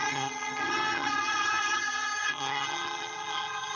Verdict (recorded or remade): remade